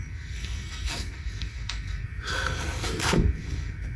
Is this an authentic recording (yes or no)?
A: no